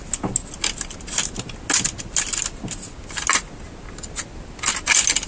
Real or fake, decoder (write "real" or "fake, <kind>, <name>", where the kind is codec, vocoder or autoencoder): real